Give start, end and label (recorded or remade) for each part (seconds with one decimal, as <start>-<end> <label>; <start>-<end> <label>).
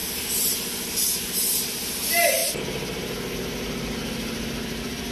0.0-5.1 recorded